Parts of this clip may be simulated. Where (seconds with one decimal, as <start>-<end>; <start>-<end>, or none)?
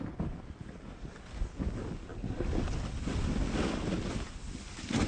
none